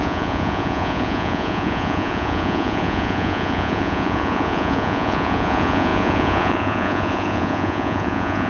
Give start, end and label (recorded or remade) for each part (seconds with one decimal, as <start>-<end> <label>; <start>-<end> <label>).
0.0-8.5 remade

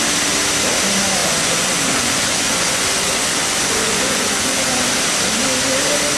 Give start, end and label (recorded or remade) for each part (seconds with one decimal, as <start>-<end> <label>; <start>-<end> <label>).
0.0-1.2 recorded; 1.2-4.6 remade; 4.6-6.2 recorded